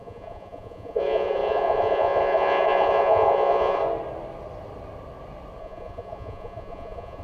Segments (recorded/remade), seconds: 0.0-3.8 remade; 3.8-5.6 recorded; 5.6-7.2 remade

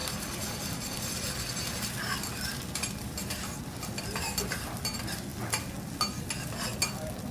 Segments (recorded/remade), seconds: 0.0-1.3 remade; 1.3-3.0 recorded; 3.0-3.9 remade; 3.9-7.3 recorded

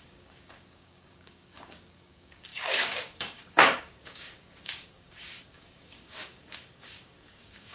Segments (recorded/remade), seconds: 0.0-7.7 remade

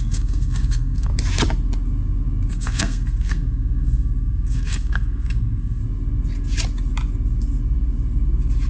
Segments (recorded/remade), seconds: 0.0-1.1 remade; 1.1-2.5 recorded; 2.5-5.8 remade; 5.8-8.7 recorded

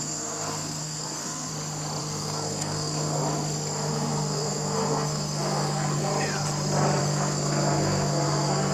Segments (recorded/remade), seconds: 0.0-1.5 remade; 1.5-2.0 recorded; 2.0-3.2 remade; 3.2-3.9 recorded; 3.9-6.1 remade; 6.1-7.0 recorded; 7.0-8.7 remade

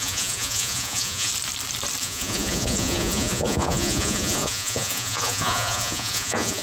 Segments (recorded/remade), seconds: 0.0-1.3 remade; 1.3-2.0 recorded; 2.0-6.6 remade

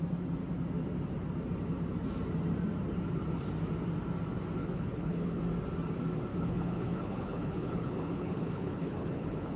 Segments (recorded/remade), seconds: 0.0-4.6 recorded; 4.6-5.4 remade; 5.4-6.3 recorded; 6.3-9.6 remade

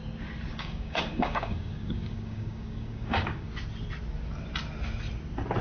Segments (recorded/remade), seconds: 0.0-0.5 recorded; 0.5-3.5 remade; 3.5-5.6 recorded